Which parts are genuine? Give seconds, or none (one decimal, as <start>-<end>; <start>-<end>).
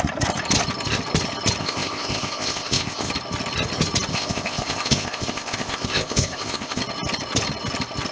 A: 0.0-1.6; 3.1-4.1; 6.8-8.1